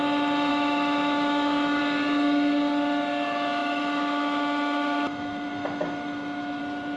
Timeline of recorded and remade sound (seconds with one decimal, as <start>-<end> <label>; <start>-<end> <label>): 0.0-0.5 recorded; 0.5-1.8 remade; 1.8-3.6 recorded; 3.6-6.6 remade; 6.6-7.0 recorded